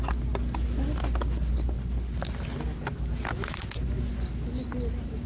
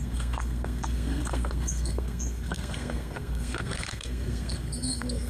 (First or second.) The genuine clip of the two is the first